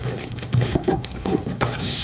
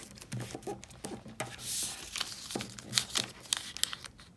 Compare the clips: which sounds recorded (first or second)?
second